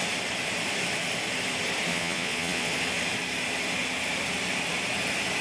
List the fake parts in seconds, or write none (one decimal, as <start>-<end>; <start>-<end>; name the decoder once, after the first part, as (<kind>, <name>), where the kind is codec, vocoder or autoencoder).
1.9-2.7 (vocoder, Vocos)